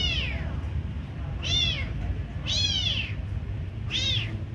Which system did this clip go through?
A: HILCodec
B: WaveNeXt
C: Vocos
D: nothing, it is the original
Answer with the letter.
D